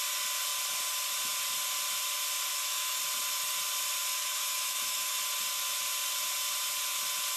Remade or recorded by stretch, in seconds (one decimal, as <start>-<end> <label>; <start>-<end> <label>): 0.0-2.5 recorded; 2.5-3.0 remade; 3.0-4.1 recorded; 4.1-5.2 remade; 5.2-7.4 recorded